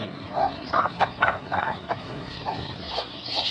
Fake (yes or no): yes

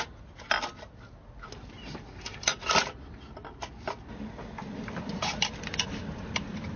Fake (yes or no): no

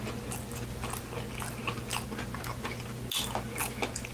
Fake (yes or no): no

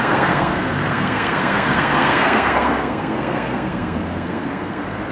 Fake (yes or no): yes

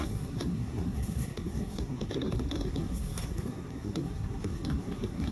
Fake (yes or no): yes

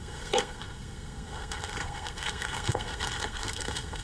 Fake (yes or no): yes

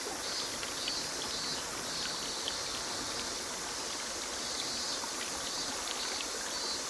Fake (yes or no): no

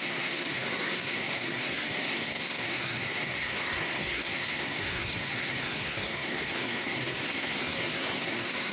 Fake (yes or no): yes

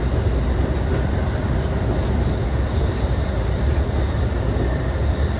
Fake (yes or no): no